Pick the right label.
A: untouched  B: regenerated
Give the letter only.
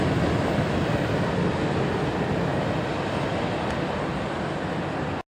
A